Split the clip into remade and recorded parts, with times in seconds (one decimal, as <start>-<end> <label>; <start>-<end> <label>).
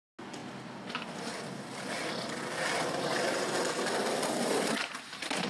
0.0-5.5 recorded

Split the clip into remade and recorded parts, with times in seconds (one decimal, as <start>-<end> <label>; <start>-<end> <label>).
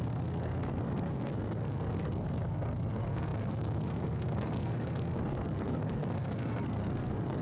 0.0-7.4 remade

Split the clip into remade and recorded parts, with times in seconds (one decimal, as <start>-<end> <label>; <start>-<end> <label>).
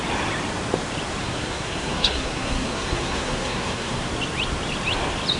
0.0-1.2 recorded; 1.2-4.1 remade; 4.1-5.4 recorded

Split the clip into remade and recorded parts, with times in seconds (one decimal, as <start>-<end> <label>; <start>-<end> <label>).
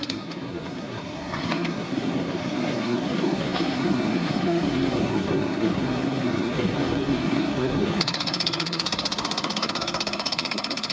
0.0-10.9 remade